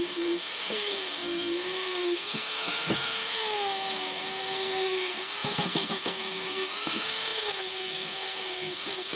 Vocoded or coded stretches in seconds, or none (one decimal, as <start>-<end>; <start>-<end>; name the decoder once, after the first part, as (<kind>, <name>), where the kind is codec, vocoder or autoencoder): 0.0-9.2 (codec, SNAC)